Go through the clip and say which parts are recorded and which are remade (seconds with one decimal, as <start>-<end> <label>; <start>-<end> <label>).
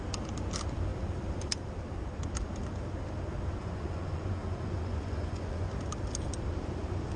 0.0-3.6 recorded; 3.6-5.7 remade; 5.7-7.2 recorded